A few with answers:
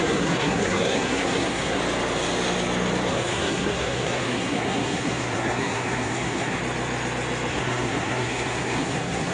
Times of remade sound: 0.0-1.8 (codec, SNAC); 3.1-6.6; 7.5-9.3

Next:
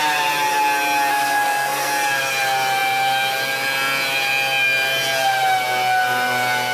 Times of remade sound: 1.1-1.9 (codec, SNAC)

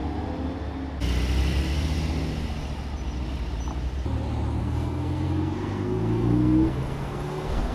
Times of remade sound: 4.6-7.7 (codec, SNAC)

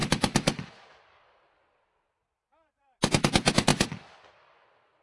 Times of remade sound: none